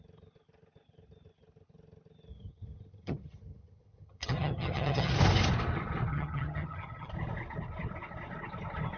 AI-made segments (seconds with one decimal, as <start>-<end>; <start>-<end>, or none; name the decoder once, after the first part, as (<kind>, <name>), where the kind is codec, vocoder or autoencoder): 2.3-5.1 (vocoder, HiFi-GAN); 6.1-7.1